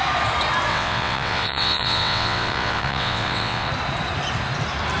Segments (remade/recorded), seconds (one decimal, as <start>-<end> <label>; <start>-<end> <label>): 0.0-0.7 recorded; 0.7-3.7 remade; 3.7-5.0 recorded